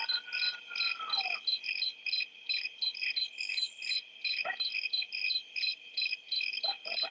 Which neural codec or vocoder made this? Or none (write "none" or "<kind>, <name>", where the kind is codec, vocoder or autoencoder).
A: none